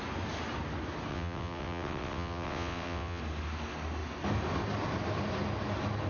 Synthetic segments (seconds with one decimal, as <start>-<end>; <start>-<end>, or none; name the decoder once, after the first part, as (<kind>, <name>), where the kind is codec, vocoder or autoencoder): 1.1-3.2 (vocoder, WaveNeXt)